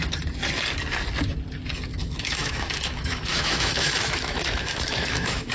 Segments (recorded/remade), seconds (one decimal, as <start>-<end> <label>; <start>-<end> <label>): 0.0-2.0 recorded; 2.0-5.5 remade